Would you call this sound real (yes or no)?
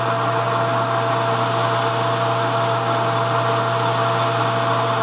yes